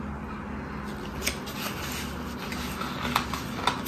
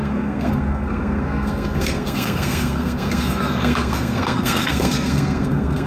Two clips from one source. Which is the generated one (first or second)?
second